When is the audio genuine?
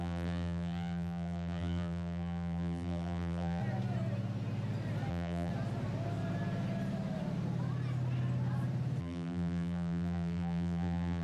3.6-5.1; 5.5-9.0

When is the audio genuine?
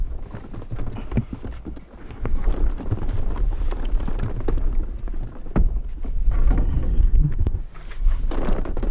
0.0-2.0; 2.5-7.0; 7.6-8.9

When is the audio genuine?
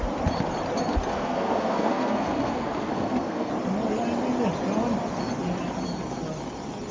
0.0-1.1; 3.5-6.9